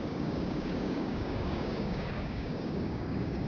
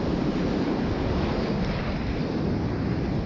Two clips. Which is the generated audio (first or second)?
first